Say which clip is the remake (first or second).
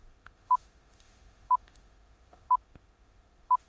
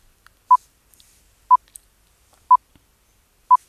first